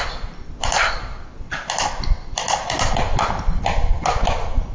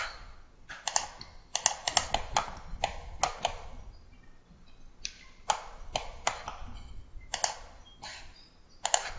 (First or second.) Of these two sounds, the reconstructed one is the first